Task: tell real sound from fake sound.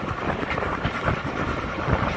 real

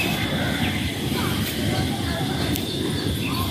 fake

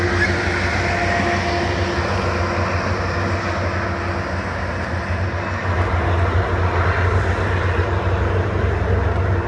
real